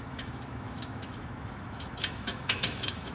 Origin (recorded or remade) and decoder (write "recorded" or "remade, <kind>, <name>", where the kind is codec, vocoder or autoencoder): remade, autoencoder, DAC-VAE